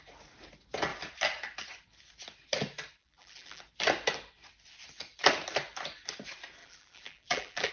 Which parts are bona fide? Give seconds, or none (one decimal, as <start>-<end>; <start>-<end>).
0.0-3.0; 3.6-6.6